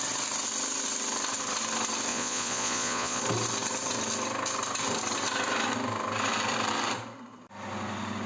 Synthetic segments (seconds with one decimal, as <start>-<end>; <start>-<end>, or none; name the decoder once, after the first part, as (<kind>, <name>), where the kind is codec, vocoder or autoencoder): 2.1-3.2 (vocoder, Vocos)